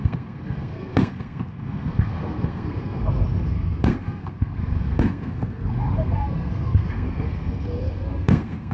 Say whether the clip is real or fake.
fake